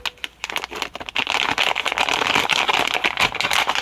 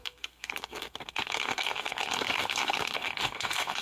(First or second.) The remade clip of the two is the second